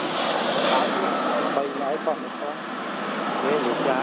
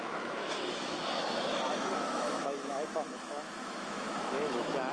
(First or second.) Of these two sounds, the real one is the first